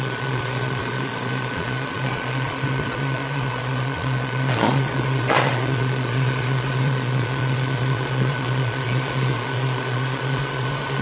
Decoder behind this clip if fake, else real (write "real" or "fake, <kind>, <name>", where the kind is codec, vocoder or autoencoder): fake, vocoder, Vocos